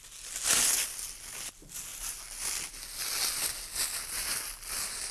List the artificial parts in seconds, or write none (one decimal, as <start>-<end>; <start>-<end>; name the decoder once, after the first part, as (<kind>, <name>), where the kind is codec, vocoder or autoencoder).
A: none